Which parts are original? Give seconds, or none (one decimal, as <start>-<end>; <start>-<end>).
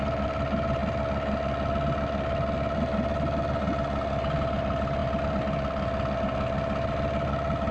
0.0-7.7